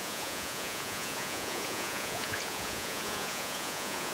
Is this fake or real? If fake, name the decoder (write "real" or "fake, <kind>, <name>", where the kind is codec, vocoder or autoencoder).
fake, vocoder, Vocos